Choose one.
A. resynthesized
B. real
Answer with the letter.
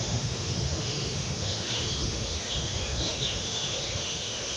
A